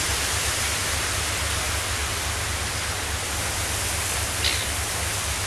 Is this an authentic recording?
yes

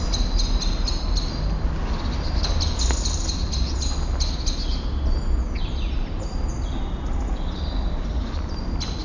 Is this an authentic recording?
yes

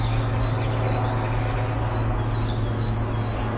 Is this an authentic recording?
yes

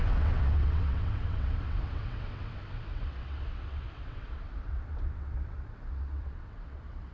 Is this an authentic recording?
no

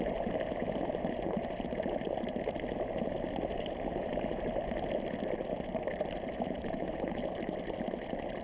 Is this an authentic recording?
yes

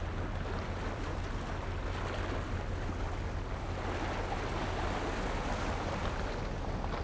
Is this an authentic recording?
yes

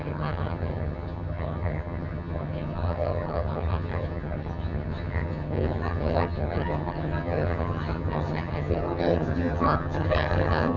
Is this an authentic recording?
no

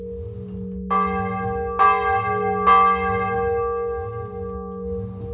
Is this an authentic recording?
yes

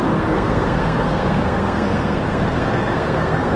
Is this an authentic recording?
no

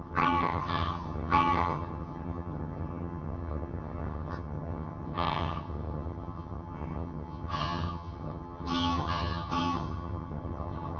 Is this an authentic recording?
no